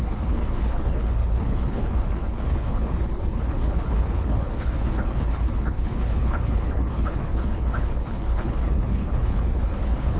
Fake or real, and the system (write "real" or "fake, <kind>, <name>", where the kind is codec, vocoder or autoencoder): fake, codec, HILCodec